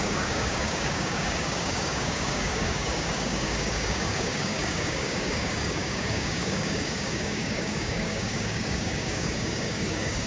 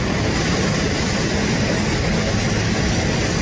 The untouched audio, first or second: second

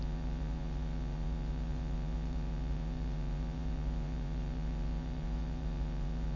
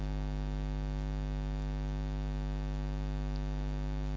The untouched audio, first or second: second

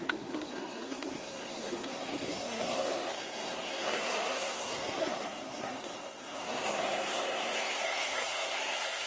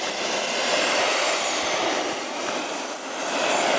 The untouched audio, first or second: second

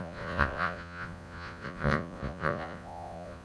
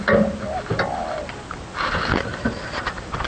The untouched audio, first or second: second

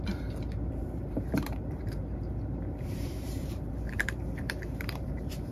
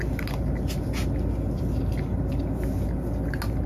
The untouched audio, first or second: second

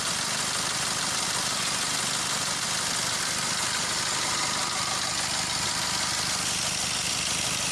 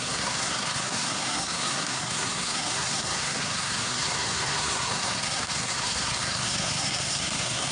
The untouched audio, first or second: first